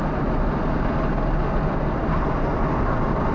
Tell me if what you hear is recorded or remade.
recorded